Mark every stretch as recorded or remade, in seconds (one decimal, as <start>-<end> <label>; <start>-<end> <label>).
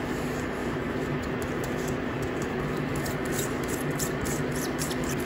0.0-0.6 recorded; 0.6-2.6 remade; 2.6-5.3 recorded